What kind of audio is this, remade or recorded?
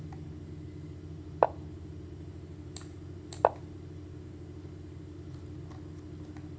recorded